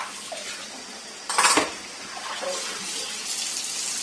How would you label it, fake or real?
real